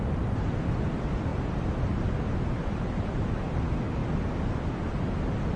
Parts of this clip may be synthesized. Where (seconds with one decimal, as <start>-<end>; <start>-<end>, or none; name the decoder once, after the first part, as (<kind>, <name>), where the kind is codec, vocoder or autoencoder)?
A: 0.0-5.6 (vocoder, BigVGAN v2)